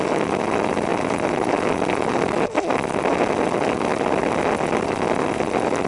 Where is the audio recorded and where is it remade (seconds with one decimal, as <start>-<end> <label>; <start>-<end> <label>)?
0.0-5.9 recorded